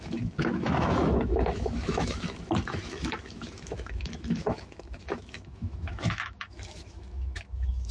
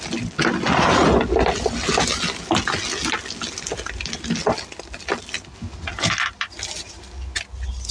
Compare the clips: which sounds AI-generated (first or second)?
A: first